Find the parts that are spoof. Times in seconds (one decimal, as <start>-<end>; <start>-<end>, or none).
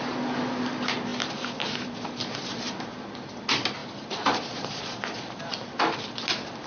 3.8-5.5